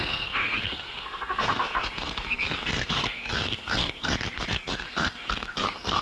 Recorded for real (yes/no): no